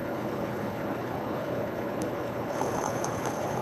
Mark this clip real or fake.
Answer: fake